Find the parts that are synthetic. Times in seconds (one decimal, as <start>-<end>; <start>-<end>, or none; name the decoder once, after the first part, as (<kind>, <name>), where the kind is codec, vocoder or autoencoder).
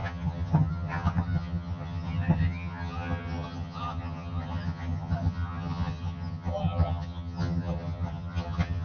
0.0-8.8 (vocoder, HiFi-GAN)